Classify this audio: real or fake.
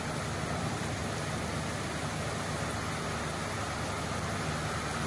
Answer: real